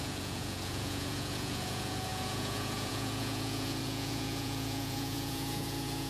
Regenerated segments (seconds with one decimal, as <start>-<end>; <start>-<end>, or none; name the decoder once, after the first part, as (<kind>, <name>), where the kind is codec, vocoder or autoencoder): 0.0-6.1 (vocoder, Vocos)